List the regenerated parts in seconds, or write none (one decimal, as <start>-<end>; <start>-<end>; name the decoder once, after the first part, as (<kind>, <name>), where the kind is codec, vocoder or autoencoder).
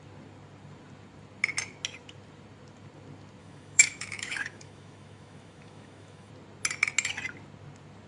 3.4-6.3 (autoencoder, DAC-VAE)